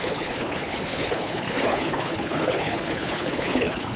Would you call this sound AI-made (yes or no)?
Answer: yes